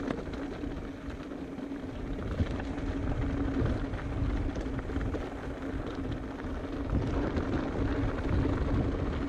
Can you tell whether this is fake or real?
real